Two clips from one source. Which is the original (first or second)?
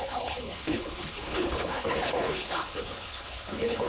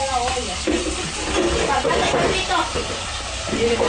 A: second